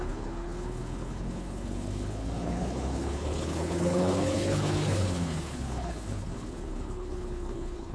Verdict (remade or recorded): remade